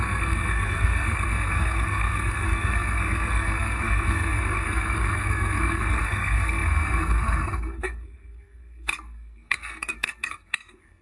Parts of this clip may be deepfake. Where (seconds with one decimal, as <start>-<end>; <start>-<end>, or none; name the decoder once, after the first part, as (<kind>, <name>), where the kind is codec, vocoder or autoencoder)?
0.0-11.0 (codec, SNAC)